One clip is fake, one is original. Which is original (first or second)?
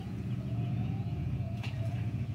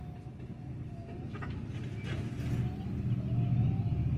second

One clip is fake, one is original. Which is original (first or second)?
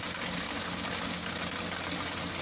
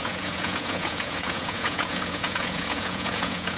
first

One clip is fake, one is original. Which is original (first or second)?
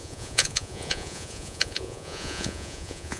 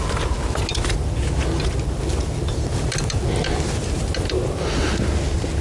second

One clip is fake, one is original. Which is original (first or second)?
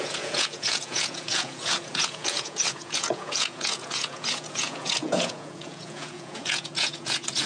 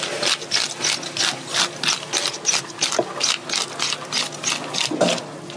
second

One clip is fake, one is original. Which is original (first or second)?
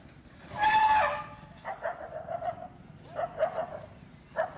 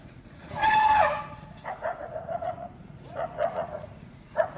first